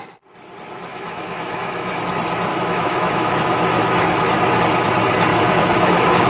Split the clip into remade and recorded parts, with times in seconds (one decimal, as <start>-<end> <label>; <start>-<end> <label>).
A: 0.0-0.9 recorded; 0.9-2.0 remade; 2.0-2.5 recorded; 2.5-4.6 remade; 4.6-5.3 recorded; 5.3-6.3 remade